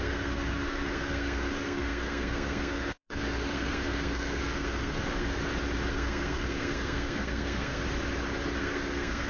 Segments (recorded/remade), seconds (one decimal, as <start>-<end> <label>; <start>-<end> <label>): 0.0-5.4 remade; 5.4-5.9 recorded; 5.9-7.8 remade; 7.8-8.6 recorded; 8.6-9.3 remade